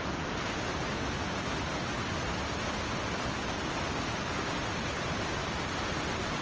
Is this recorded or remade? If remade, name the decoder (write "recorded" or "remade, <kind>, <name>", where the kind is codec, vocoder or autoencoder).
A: recorded